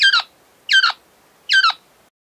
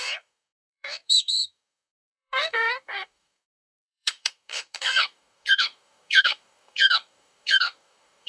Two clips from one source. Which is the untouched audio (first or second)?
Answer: first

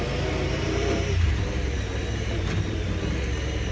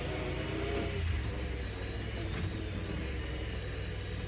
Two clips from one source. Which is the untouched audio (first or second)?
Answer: second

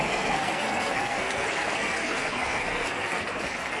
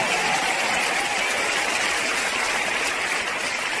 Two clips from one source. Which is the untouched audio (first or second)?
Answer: second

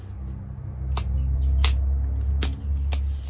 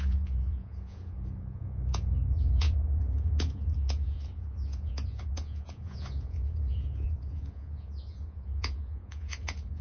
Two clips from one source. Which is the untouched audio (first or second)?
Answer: first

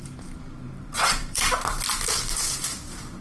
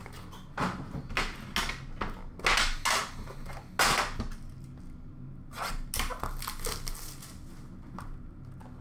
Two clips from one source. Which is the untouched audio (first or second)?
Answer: second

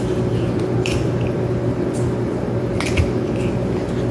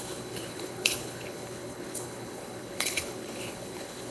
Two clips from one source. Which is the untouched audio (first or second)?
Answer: first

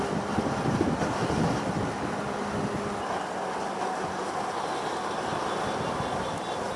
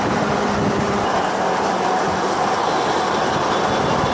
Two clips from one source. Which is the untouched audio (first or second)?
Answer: first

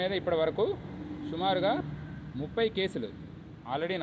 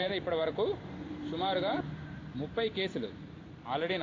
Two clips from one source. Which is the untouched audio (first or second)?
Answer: first